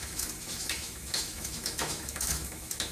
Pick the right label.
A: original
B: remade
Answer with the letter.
B